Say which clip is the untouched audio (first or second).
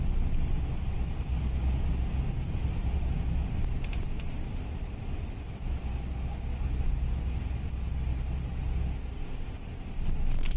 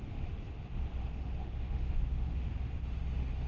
first